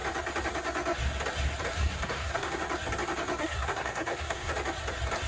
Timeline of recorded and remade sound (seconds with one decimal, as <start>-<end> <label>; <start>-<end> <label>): 0.0-1.7 recorded; 1.7-2.6 remade; 2.6-3.4 recorded; 3.4-4.5 remade; 4.5-5.3 recorded